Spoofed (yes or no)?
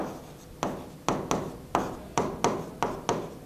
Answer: no